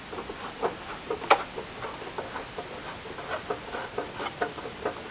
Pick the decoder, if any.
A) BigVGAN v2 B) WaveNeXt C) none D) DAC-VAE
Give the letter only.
C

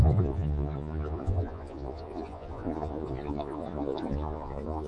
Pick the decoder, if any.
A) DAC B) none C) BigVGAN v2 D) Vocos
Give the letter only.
D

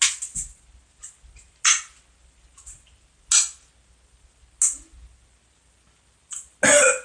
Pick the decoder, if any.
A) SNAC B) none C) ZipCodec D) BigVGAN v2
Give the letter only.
B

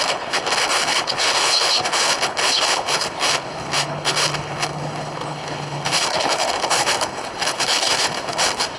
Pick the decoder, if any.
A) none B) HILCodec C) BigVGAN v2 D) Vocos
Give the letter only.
B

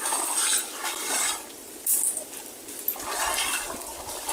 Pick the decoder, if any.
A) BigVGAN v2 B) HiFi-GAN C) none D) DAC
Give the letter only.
C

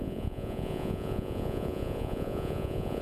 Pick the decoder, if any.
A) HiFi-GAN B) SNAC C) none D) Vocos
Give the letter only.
D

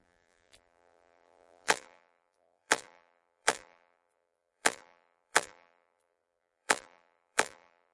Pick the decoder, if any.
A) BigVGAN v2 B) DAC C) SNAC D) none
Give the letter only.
A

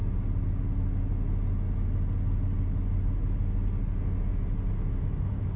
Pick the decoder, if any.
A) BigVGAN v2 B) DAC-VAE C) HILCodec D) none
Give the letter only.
D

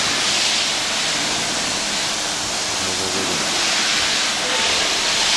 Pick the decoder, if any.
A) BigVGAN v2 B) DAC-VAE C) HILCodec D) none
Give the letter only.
D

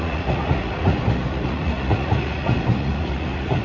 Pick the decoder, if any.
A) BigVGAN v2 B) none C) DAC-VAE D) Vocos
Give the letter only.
D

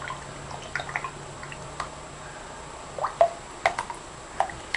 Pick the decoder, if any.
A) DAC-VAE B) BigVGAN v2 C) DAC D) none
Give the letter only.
D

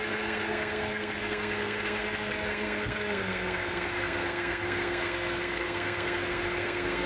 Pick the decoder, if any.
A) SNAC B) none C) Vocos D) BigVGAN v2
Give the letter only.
A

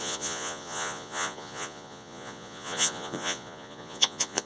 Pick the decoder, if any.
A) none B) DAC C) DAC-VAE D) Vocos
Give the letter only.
D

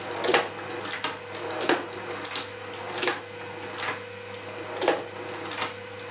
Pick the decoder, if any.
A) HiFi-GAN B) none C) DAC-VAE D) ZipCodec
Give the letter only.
B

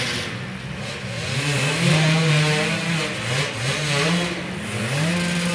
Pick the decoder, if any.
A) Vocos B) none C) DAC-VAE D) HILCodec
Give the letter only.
B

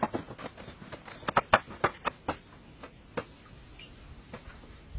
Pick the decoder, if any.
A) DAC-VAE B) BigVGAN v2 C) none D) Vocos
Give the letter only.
C